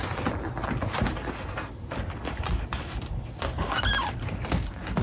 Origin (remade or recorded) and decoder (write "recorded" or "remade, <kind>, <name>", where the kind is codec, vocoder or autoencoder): recorded